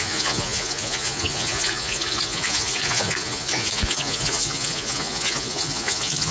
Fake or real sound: fake